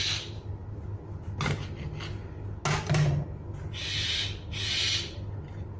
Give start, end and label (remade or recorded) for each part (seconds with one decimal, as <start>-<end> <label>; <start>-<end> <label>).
0.0-5.8 recorded